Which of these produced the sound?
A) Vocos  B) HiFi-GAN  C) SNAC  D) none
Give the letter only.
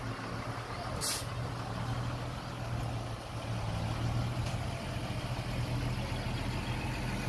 D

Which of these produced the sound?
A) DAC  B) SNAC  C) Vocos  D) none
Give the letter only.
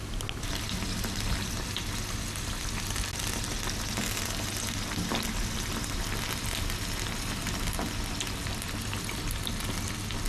D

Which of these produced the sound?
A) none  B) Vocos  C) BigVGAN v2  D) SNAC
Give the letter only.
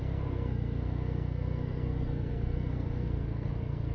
D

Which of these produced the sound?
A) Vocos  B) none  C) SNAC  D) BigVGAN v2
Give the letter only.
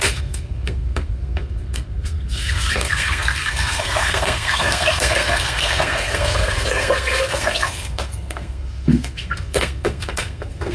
C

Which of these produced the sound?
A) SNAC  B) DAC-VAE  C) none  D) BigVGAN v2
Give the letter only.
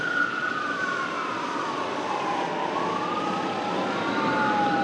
C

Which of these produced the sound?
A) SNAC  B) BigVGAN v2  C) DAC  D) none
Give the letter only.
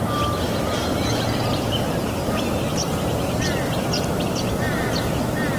D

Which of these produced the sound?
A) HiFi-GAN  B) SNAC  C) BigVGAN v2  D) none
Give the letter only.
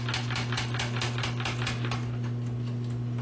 D